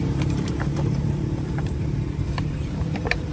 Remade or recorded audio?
remade